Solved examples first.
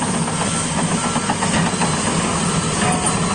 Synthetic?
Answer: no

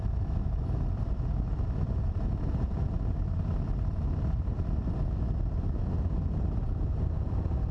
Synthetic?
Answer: no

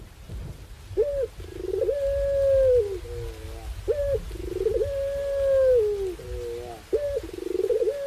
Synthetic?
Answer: no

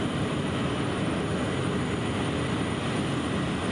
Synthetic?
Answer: no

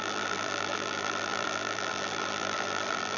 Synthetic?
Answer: yes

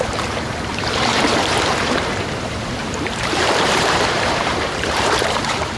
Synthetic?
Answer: yes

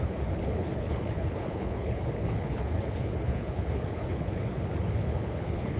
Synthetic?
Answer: yes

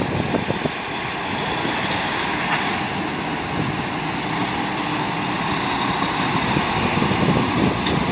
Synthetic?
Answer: no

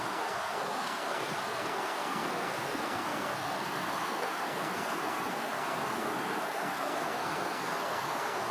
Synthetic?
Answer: yes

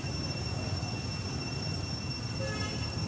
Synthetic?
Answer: no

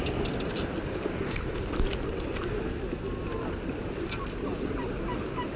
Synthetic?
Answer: no